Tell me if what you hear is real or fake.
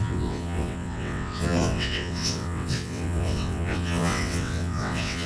fake